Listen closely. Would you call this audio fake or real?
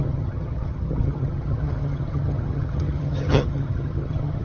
fake